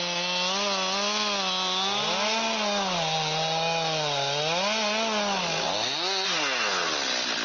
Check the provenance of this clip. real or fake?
real